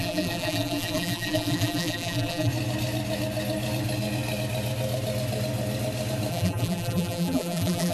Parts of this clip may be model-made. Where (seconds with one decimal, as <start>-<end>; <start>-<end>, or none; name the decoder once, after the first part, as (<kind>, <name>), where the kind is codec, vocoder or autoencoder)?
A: 0.0-2.5 (vocoder, BigVGAN v2); 6.3-7.9